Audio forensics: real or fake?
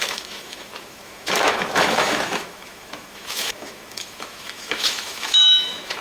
fake